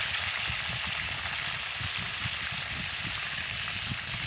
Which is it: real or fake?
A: real